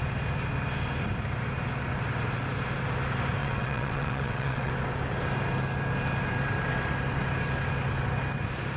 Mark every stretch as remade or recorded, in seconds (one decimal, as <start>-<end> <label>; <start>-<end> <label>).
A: 0.0-3.4 recorded; 3.4-4.7 remade; 4.7-8.8 recorded